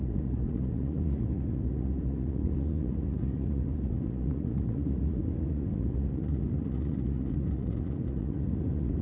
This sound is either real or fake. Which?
fake